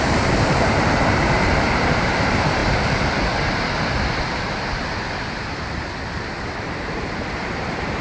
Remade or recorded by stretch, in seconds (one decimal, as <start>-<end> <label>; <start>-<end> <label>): 0.0-2.6 remade; 2.6-6.8 recorded; 6.8-8.0 remade